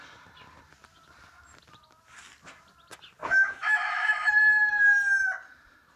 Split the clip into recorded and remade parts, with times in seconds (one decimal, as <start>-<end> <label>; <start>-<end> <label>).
0.0-3.2 recorded; 3.2-4.3 remade; 4.3-6.0 recorded